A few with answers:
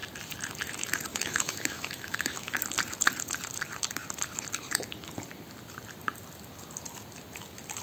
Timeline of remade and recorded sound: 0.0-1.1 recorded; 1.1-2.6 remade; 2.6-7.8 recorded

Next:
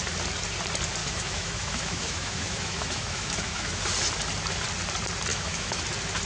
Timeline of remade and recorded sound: 0.0-1.0 recorded; 1.0-3.8 remade; 3.8-5.3 recorded; 5.3-5.8 remade; 5.8-6.3 recorded